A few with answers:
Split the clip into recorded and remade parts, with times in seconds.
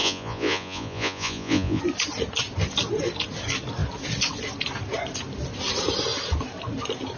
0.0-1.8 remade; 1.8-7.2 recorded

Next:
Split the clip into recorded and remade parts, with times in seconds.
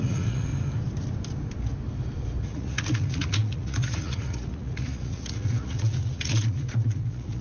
0.0-0.5 remade; 0.5-2.4 recorded; 2.4-7.4 remade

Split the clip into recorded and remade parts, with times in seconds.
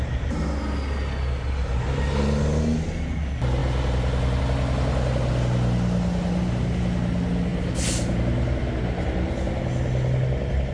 0.0-10.7 recorded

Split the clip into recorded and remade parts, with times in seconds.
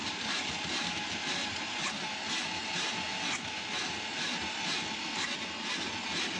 0.0-6.4 recorded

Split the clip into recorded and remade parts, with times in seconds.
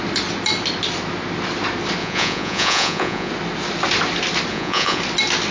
0.0-2.0 recorded; 2.0-3.3 remade; 3.3-4.5 recorded; 4.5-5.0 remade; 5.0-5.5 recorded